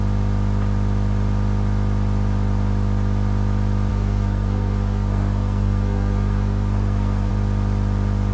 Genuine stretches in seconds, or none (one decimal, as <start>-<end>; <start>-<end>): 0.0-3.9; 7.3-8.3